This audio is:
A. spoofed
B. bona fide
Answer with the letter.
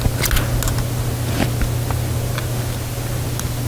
B